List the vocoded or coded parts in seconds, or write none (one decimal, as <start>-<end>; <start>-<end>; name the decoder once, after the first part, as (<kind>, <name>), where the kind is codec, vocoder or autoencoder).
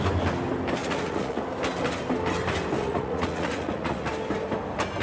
0.8-1.4 (vocoder, Vocos); 2.8-4.1